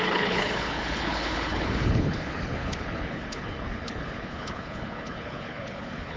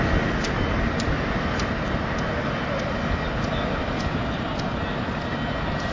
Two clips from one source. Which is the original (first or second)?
second